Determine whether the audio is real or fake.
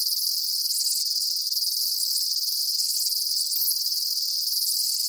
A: real